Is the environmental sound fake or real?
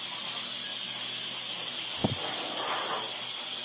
real